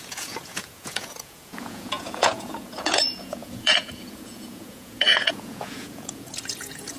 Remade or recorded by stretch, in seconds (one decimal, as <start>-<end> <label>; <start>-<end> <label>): 0.0-7.0 remade